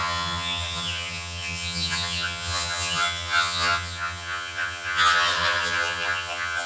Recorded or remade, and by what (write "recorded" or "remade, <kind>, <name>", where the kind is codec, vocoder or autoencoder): remade, vocoder, HiFi-GAN